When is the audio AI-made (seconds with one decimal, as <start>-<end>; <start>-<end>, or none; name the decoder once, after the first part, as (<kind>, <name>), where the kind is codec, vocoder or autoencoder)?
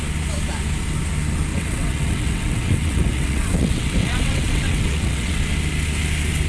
1.5-5.4 (vocoder, WaveNeXt)